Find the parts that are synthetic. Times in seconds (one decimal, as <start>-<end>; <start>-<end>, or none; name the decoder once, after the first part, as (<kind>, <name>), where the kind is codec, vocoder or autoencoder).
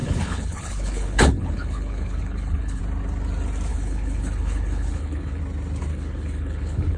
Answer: 0.0-2.8 (codec, HILCodec); 3.7-5.4; 5.9-7.0